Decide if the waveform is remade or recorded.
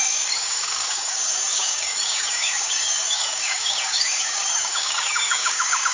remade